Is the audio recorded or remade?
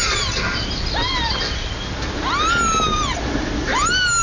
recorded